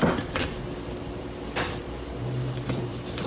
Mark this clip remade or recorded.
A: remade